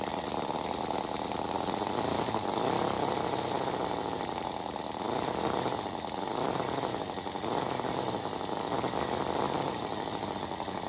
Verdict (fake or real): real